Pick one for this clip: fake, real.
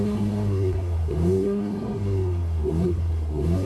fake